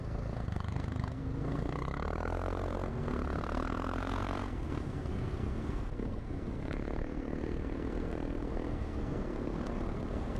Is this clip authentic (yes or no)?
no